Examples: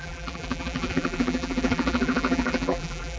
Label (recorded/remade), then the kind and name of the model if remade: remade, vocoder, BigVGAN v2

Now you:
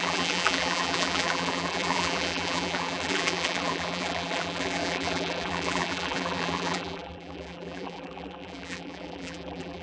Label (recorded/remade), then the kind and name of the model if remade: remade, vocoder, BigVGAN v2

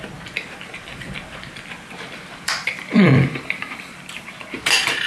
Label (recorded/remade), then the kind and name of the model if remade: remade, vocoder, BigVGAN v2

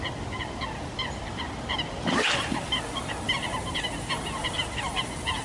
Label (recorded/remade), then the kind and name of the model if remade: recorded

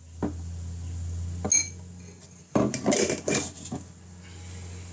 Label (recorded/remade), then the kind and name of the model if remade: recorded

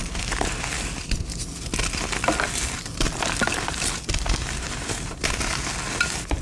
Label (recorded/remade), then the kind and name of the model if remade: recorded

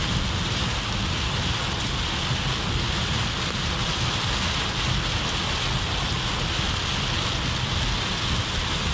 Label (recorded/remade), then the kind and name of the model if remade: recorded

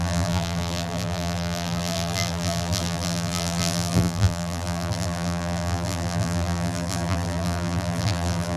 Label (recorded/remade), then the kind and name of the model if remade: remade, vocoder, BigVGAN v2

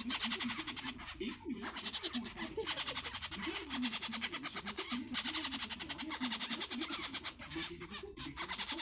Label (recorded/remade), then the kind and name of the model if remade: recorded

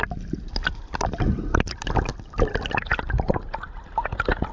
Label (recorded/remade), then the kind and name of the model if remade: recorded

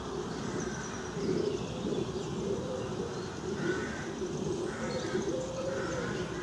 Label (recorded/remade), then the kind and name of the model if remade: remade, vocoder, BigVGAN v2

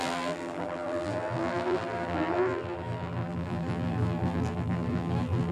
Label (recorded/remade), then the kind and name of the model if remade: remade, vocoder, BigVGAN v2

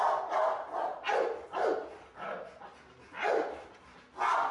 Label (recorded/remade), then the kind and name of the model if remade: recorded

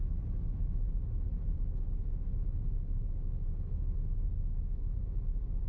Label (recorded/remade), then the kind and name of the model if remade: recorded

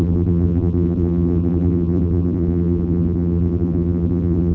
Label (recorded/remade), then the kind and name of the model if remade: remade, vocoder, BigVGAN v2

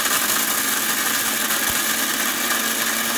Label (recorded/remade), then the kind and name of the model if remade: recorded